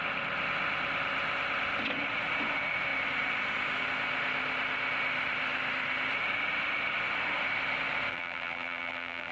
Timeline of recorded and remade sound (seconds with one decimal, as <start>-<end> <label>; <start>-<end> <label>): 0.0-8.1 recorded; 8.1-9.3 remade